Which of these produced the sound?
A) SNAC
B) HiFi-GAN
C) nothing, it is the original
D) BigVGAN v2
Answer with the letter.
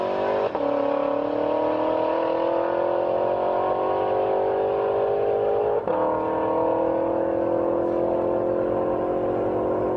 C